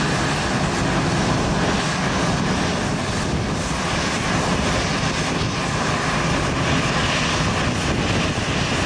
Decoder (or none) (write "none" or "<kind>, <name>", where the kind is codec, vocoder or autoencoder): none